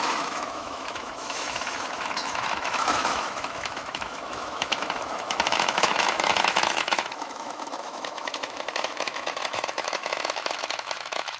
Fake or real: fake